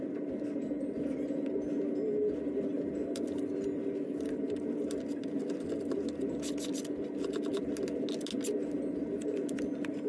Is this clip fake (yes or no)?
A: no